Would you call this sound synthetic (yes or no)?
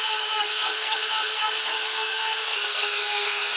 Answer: yes